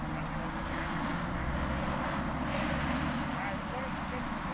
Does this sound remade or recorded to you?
recorded